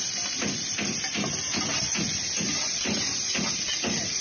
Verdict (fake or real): real